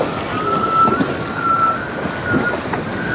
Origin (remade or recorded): recorded